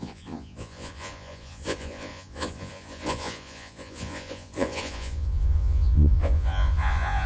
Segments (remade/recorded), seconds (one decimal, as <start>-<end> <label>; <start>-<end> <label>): 0.0-7.3 remade